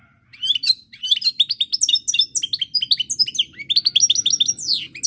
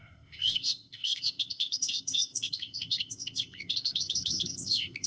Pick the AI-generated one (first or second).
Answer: second